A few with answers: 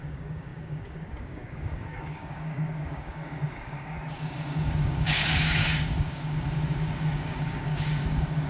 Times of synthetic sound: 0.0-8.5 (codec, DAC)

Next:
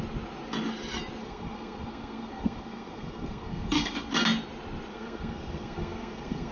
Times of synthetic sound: 1.2-4.1 (codec, SNAC); 4.9-6.5

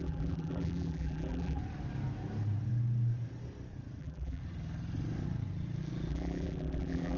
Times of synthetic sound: 0.0-1.6 (vocoder, BigVGAN v2); 4.0-4.4; 6.1-7.2

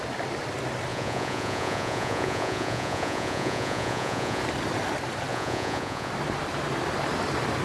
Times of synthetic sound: 0.9-4.4 (vocoder, Vocos); 5.3-6.1

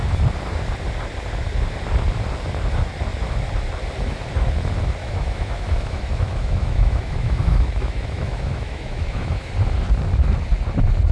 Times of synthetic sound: 5.0-9.5 (autoencoder, DAC-VAE)

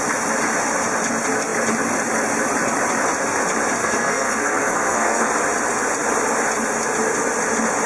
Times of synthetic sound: 3.8-5.3 (codec, SNAC)

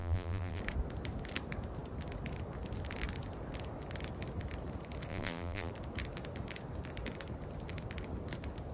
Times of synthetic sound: 0.0-0.6 (vocoder, BigVGAN v2); 5.1-5.7